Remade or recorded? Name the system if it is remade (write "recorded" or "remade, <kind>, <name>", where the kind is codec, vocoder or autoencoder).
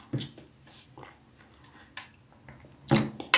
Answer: recorded